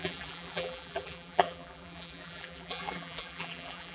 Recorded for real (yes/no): no